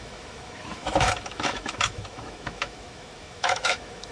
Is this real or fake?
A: fake